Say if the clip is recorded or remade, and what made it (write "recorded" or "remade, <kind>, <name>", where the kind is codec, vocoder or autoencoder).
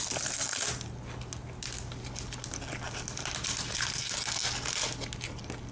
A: recorded